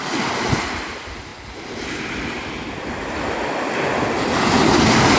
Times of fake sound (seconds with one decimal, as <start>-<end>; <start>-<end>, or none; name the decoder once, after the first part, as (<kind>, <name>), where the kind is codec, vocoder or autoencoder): 0.0-1.3 (vocoder, BigVGAN v2); 4.2-5.2